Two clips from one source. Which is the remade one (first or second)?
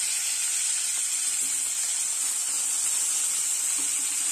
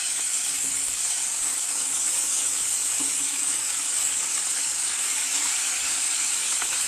second